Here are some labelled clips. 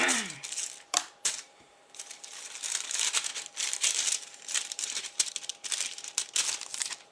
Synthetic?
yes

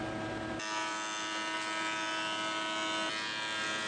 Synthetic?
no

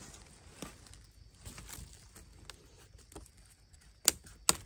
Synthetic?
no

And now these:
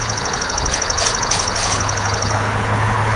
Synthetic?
yes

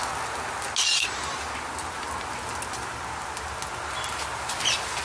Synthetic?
no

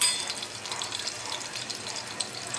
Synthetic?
yes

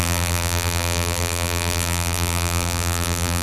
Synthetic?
yes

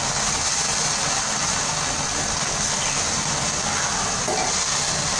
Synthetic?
no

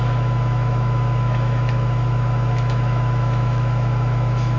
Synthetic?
yes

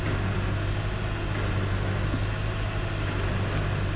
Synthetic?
no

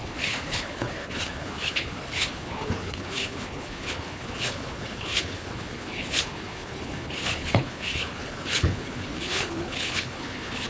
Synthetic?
yes